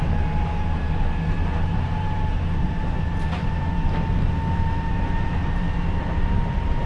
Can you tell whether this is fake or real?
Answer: fake